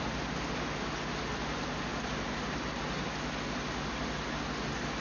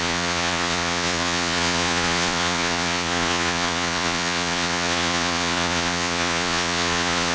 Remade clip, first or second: second